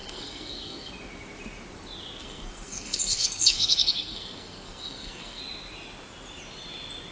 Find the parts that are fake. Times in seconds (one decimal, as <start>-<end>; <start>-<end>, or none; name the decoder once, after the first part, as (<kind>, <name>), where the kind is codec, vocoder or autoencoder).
0.0-0.9 (codec, SNAC); 2.2-5.4